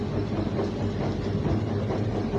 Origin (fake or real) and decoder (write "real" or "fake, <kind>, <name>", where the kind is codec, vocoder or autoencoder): real